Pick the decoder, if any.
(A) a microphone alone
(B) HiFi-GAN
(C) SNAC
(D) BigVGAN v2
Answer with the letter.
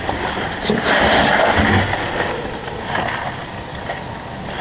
A